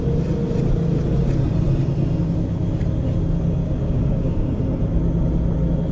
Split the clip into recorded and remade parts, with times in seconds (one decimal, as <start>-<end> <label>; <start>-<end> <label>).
0.0-3.6 recorded; 3.6-4.6 remade; 4.6-5.9 recorded